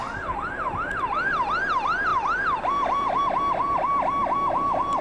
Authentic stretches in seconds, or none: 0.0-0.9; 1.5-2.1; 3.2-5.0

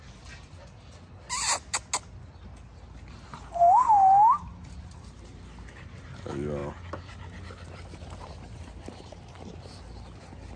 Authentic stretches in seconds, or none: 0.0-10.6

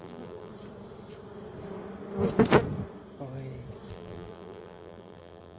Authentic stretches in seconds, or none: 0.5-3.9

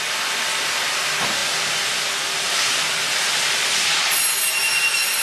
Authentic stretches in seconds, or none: 0.0-5.2

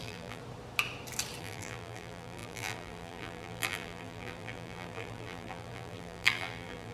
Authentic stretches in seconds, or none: 0.4-1.4

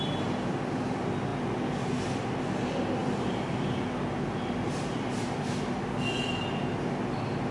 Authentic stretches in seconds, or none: 0.0-3.0; 3.8-7.5

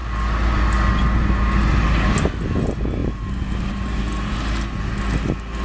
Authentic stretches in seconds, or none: 0.0-3.0; 4.0-5.6

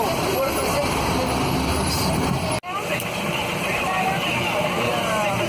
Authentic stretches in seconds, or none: 0.8-3.3